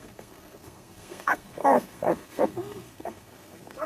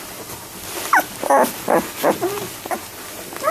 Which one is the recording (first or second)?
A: second